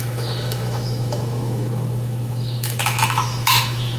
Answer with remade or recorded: remade